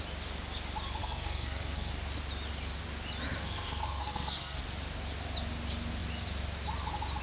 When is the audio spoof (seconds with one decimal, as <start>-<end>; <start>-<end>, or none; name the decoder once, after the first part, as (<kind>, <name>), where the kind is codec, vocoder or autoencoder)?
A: 1.0-1.9 (codec, SNAC); 3.4-4.6